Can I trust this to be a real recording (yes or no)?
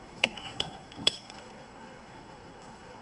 no